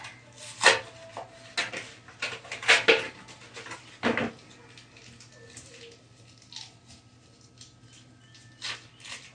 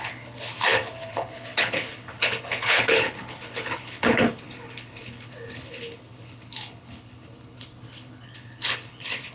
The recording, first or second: first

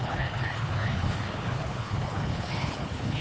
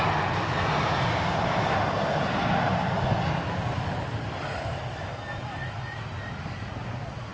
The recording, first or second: second